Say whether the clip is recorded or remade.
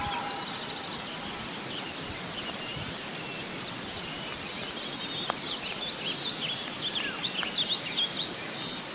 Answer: recorded